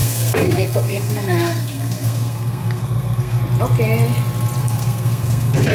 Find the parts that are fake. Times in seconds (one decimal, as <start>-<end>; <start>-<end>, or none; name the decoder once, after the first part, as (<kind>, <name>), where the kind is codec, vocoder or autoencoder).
0.0-3.4 (codec, SNAC); 4.6-5.7